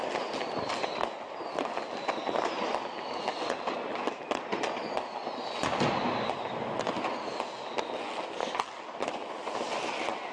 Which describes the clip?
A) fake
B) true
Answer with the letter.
B